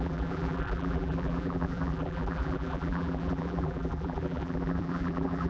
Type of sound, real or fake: fake